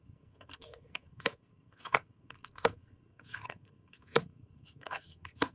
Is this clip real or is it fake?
fake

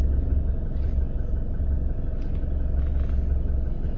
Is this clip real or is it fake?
real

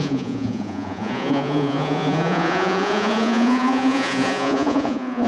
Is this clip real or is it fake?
fake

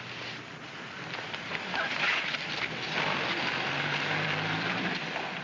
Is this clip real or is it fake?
fake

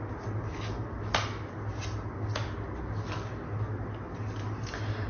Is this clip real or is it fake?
real